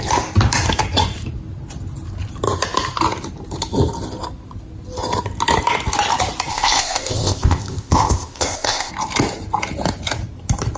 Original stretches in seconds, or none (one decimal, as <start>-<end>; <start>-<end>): 0.0-6.5; 8.9-10.8